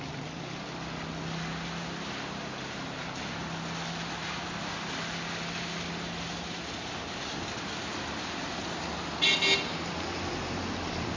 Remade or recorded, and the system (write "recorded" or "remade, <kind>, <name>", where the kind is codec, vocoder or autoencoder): recorded